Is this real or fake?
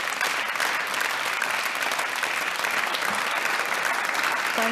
real